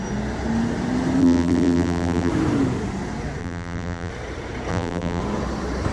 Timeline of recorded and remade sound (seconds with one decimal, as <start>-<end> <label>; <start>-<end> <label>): 0.0-1.2 recorded; 1.2-2.3 remade; 2.3-3.4 recorded; 3.4-4.1 remade; 4.1-4.7 recorded; 4.7-5.2 remade; 5.2-5.9 recorded